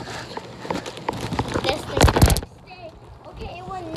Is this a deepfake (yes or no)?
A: no